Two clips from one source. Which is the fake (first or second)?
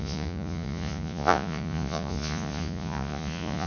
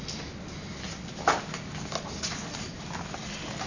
first